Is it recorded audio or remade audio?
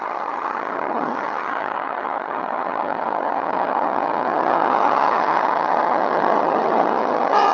remade